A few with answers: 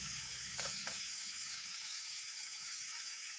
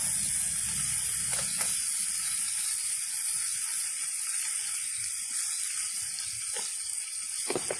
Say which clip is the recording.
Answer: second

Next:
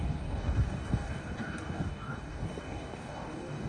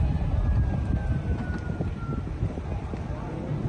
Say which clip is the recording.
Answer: second